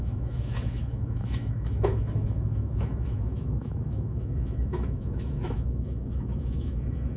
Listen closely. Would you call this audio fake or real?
fake